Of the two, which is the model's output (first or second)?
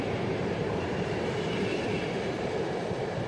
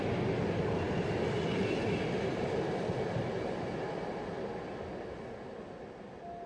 first